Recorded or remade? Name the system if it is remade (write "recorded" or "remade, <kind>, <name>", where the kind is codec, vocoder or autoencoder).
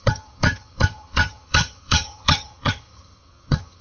remade, vocoder, HiFi-GAN